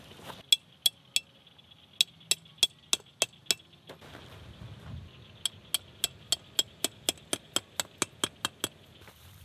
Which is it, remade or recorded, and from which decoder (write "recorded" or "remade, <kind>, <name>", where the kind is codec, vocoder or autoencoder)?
recorded